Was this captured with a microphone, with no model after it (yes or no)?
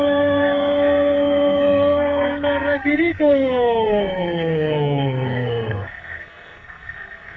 no